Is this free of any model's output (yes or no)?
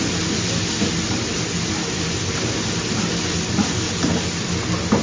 yes